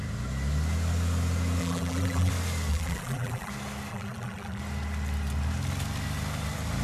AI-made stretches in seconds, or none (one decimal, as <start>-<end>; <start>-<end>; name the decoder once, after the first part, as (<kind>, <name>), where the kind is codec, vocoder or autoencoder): 1.6-2.3 (vocoder, BigVGAN v2); 2.7-3.5; 3.9-4.6